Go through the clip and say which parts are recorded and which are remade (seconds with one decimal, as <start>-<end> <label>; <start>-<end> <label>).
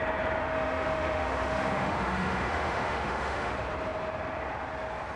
0.0-0.4 recorded; 0.4-3.5 remade; 3.5-5.2 recorded